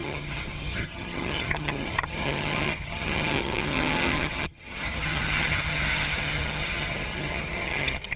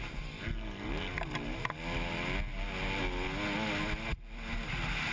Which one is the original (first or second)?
second